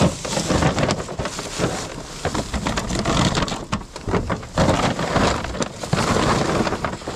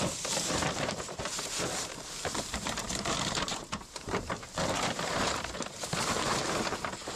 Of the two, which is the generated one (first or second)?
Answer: second